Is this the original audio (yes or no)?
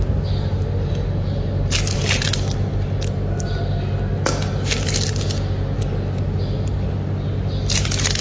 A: yes